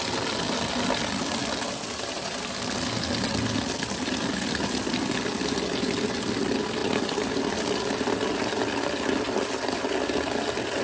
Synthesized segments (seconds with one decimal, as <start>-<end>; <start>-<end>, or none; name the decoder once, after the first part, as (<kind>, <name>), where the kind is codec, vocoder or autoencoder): none